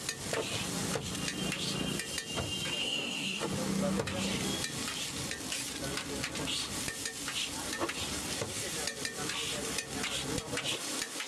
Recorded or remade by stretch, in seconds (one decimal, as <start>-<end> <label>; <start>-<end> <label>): 0.0-2.8 recorded; 2.8-3.4 remade; 3.4-11.3 recorded